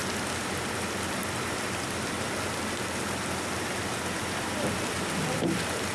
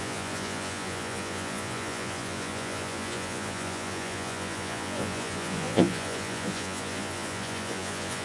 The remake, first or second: second